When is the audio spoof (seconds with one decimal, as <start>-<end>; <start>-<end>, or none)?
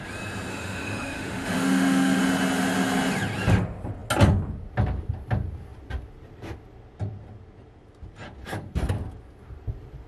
0.5-2.2